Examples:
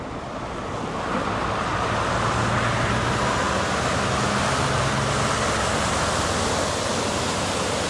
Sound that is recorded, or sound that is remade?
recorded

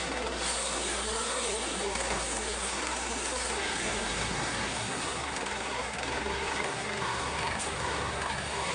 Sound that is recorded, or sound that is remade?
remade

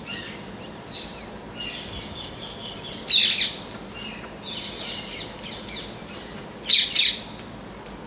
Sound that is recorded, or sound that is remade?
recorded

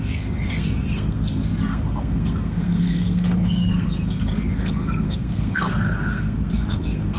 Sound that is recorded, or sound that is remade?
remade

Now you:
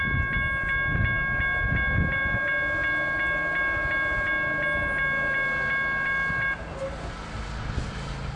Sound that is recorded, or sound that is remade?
recorded